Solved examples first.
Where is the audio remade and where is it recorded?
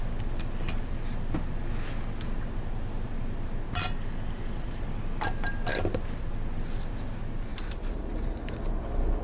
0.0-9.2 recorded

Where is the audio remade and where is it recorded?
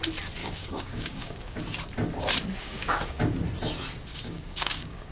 0.0-0.4 recorded; 0.4-1.6 remade; 1.6-2.6 recorded; 2.6-3.2 remade; 3.2-4.1 recorded; 4.1-5.1 remade